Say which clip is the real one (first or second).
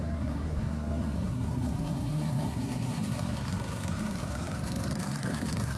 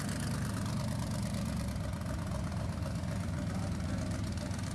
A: second